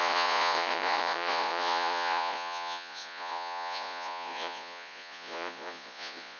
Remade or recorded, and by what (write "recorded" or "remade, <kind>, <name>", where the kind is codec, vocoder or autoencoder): remade, vocoder, Vocos